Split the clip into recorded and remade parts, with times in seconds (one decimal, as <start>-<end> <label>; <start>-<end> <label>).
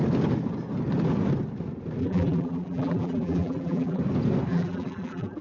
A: 0.0-2.0 recorded; 2.0-4.0 remade; 4.0-4.5 recorded; 4.5-5.4 remade